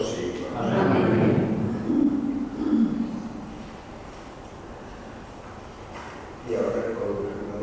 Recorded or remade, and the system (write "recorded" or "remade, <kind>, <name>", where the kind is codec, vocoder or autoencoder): recorded